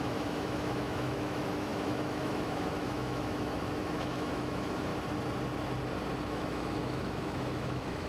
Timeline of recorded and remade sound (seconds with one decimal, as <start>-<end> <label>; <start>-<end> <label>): 0.0-4.9 remade; 4.9-6.3 recorded; 6.3-8.1 remade